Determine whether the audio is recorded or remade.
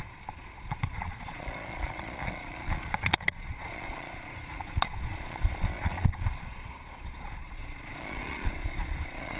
remade